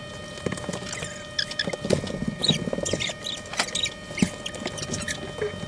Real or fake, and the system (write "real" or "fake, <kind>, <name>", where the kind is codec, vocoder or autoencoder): real